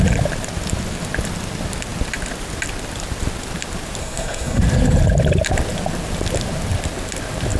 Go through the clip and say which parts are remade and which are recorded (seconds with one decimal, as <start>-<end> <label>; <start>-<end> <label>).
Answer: 0.0-4.0 recorded; 4.0-4.6 remade; 4.6-7.6 recorded